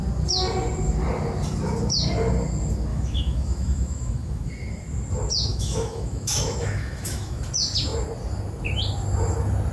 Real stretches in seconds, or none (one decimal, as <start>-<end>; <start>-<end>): 0.0-2.9; 4.5-5.5; 7.4-9.7